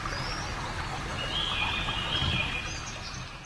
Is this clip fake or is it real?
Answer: real